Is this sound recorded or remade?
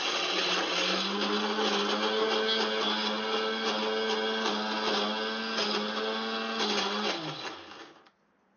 recorded